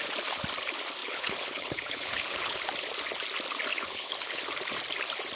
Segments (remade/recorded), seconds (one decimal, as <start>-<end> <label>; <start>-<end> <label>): 0.0-1.0 recorded; 1.0-2.6 remade; 2.6-3.7 recorded; 3.7-4.4 remade; 4.4-5.4 recorded